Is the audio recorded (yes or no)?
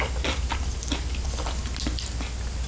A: yes